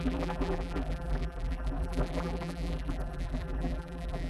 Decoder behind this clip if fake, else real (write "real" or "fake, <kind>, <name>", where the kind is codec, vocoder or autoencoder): fake, vocoder, BigVGAN v2